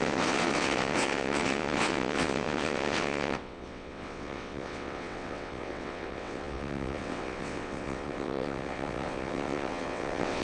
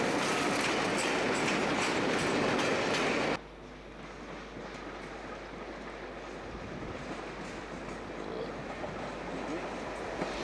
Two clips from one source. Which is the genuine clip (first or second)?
second